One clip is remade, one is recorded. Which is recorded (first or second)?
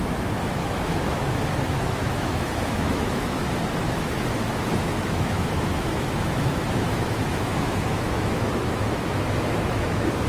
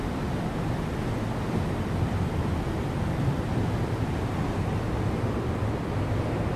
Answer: second